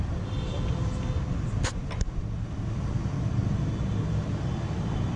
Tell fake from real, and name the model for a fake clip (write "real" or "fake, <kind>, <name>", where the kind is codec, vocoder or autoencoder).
real